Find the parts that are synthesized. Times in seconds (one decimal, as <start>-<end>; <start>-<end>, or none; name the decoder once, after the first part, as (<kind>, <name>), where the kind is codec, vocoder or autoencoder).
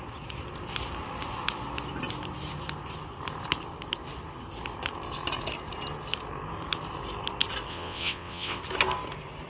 7.7-8.6 (vocoder, WaveNeXt)